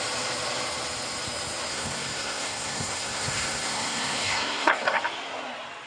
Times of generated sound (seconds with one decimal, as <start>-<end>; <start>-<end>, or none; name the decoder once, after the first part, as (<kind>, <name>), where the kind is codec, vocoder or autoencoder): 1.7-5.0 (codec, SNAC)

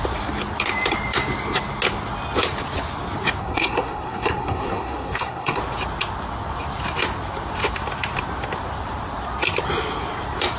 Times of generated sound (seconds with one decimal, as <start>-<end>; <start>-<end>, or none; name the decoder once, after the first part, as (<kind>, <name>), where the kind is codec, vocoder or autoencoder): 3.4-5.6 (codec, SNAC)

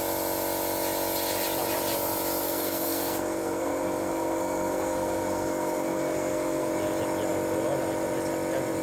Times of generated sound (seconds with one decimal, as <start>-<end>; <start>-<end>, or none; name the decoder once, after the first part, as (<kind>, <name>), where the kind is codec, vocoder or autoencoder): 2.4-6.7 (codec, SNAC)

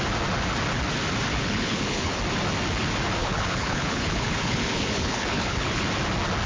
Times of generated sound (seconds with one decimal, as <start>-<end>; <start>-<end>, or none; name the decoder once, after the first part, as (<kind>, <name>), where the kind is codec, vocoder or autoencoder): 1.3-2.2 (codec, HILCodec); 3.2-5.8

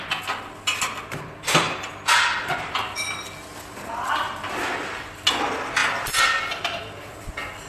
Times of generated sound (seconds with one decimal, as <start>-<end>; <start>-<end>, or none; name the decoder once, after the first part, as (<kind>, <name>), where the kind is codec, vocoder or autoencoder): none